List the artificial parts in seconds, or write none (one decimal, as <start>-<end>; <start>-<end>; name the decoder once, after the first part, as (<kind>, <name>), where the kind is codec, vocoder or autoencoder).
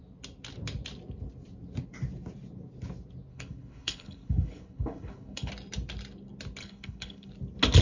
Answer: 3.3-5.5 (codec, HILCodec); 6.6-7.3